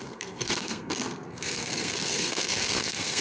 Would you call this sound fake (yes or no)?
yes